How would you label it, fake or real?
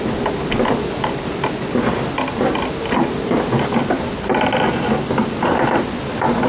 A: real